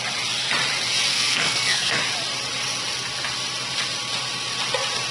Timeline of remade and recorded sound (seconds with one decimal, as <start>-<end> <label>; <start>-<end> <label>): 0.0-1.1 recorded; 1.1-2.0 remade; 2.0-5.1 recorded